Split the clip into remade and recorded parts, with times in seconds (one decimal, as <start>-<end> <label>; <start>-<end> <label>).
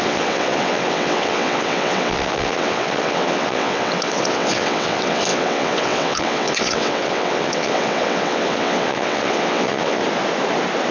0.0-10.0 remade; 10.0-10.9 recorded